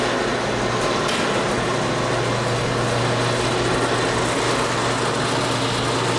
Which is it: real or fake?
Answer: real